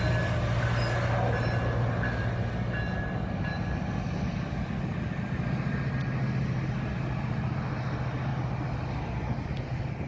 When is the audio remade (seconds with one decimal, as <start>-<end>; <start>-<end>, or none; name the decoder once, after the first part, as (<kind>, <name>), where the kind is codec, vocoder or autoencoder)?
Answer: none